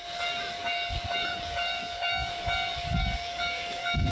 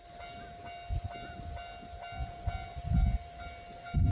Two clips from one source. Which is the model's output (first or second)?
first